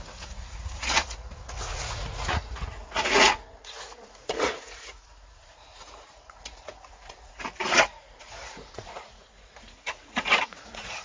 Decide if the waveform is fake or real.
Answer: fake